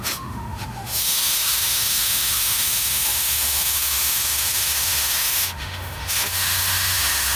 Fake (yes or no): yes